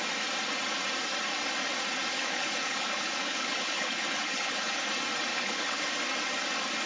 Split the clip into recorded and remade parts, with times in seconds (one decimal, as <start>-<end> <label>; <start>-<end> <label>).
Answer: 0.0-2.1 recorded; 2.1-4.8 remade; 4.8-5.3 recorded; 5.3-5.9 remade; 5.9-6.9 recorded